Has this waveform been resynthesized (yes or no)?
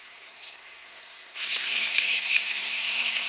yes